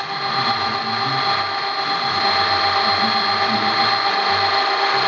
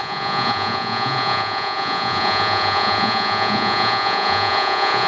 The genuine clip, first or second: first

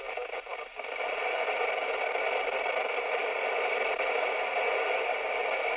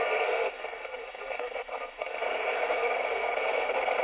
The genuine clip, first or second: first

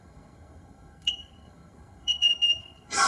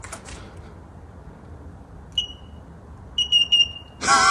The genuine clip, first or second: second